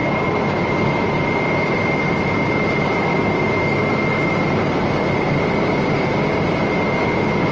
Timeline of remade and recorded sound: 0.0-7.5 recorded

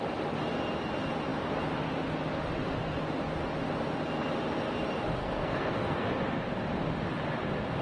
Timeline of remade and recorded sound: 0.0-5.2 recorded; 5.2-6.1 remade; 6.1-7.8 recorded